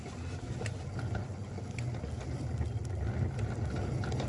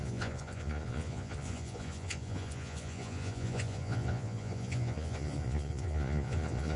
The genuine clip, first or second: first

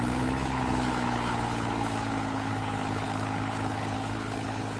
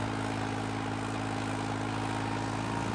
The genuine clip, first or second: second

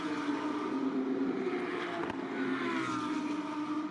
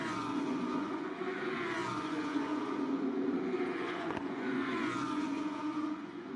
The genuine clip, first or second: first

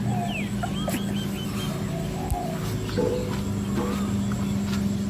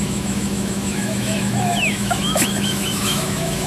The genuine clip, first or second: first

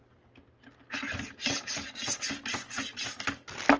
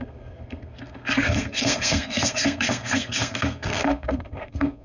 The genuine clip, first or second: first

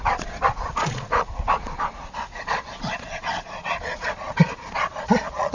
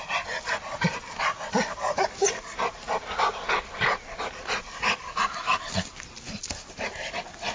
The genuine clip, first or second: second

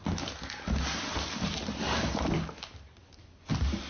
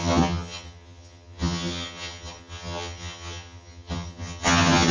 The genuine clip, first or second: first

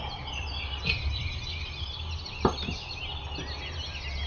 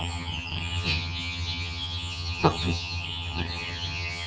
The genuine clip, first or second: first